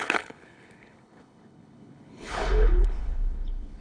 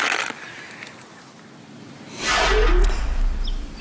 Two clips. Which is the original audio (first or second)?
second